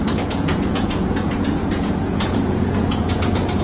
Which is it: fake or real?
fake